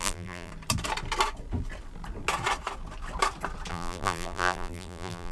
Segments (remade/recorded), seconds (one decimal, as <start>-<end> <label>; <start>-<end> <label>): 0.0-0.5 remade; 0.5-3.7 recorded; 3.7-5.3 remade